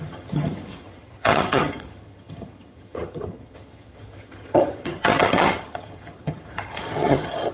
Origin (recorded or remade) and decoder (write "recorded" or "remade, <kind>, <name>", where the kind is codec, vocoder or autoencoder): remade, vocoder, HiFi-GAN